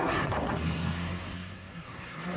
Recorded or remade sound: remade